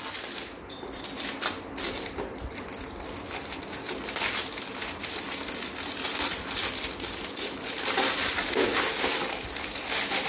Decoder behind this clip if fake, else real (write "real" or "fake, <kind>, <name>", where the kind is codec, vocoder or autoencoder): real